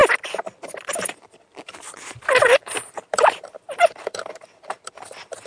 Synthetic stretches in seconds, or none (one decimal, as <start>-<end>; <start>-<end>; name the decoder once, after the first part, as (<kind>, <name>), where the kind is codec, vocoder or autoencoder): 1.5-4.8 (vocoder, BigVGAN v2)